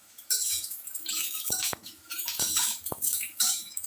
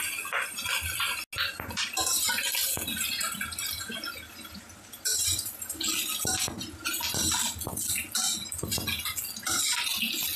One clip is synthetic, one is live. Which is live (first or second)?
second